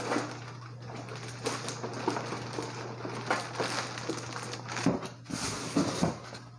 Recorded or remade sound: recorded